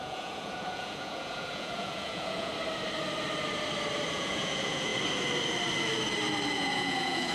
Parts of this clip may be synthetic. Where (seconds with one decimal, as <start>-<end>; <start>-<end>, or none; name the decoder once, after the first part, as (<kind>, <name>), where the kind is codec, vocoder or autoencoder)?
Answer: 0.0-2.5 (vocoder, Vocos); 4.1-4.9; 6.5-7.3